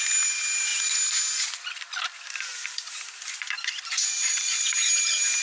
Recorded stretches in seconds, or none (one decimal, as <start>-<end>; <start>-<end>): 0.7-1.4